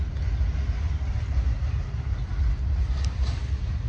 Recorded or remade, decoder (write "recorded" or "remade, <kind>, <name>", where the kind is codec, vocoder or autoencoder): recorded